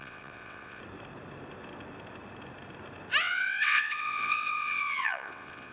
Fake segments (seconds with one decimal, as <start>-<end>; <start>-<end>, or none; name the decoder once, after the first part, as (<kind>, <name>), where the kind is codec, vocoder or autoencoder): 0.0-0.8 (vocoder, WaveNeXt); 3.2-5.7